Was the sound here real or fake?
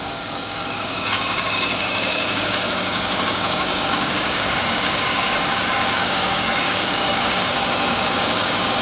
fake